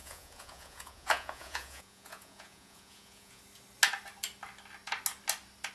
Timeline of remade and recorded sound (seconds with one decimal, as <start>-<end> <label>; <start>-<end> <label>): 0.0-3.4 remade; 3.4-5.7 recorded